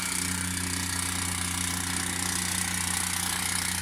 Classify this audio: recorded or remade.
recorded